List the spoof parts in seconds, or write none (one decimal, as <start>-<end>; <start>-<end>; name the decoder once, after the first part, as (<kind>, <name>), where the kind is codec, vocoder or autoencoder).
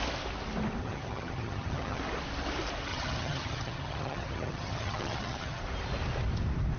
0.8-2.0 (vocoder, HiFi-GAN); 2.9-5.6